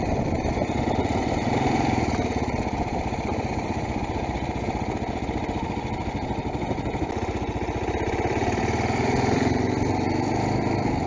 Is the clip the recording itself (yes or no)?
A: no